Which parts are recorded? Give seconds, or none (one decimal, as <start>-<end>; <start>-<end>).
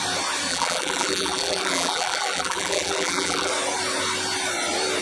0.0-0.5; 3.5-5.0